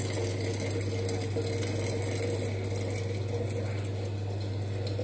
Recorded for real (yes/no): yes